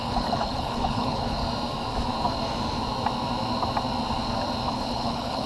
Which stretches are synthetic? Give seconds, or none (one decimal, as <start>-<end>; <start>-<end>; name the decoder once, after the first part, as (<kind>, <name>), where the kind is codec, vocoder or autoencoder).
0.0-1.4 (codec, HILCodec); 4.7-5.5